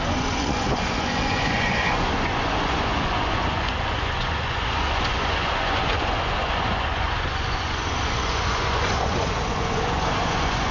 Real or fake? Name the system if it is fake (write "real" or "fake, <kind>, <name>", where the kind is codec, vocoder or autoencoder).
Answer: fake, vocoder, Vocos